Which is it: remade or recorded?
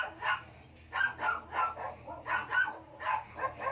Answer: recorded